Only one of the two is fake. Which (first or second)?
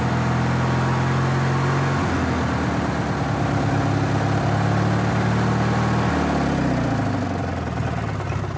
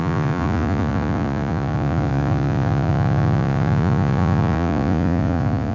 second